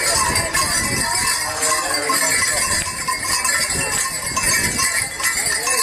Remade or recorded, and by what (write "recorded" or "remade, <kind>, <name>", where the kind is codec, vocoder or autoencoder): recorded